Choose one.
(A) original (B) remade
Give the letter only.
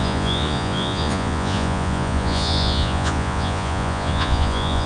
B